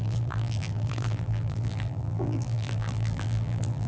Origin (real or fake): fake